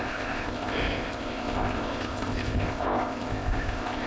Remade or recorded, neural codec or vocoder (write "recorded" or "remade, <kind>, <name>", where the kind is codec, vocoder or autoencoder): remade, codec, ZipCodec